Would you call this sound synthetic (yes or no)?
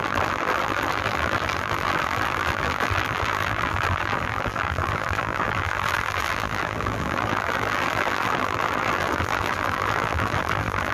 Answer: yes